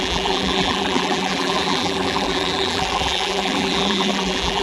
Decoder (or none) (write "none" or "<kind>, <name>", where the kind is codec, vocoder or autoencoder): vocoder, BigVGAN v2